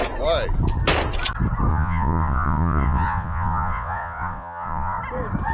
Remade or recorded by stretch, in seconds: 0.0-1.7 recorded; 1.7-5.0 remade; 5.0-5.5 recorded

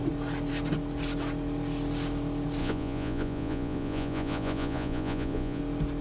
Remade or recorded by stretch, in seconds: 0.0-2.6 recorded; 2.6-5.6 remade; 5.6-6.0 recorded

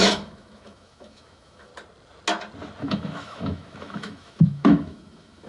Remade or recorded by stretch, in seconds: 0.0-1.7 remade; 1.7-2.8 recorded; 2.8-5.5 remade